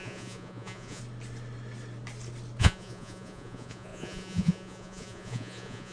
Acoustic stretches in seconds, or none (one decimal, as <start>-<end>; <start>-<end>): 1.0-2.6